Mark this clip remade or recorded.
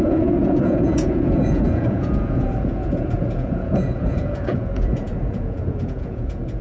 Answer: remade